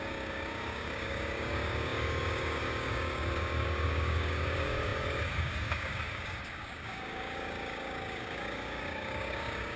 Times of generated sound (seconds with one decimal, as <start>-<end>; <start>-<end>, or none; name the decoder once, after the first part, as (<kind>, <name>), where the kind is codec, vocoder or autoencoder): 0.0-9.8 (codec, DAC)